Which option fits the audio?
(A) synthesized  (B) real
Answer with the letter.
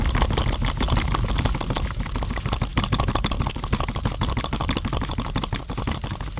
B